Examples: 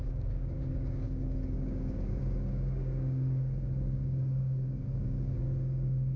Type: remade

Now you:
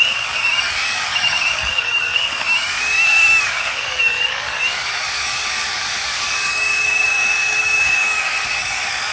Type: remade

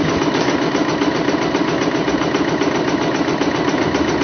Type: recorded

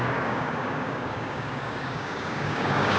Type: remade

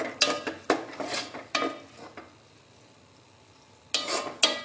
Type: recorded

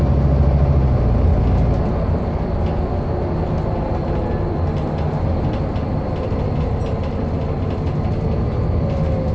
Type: recorded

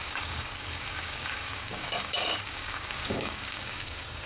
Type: remade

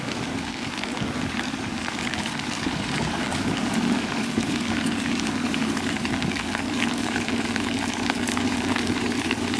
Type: remade